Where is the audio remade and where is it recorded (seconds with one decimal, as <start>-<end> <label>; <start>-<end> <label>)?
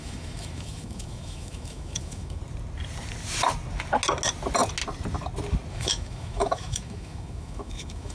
0.0-2.4 remade; 2.4-5.7 recorded; 5.7-8.1 remade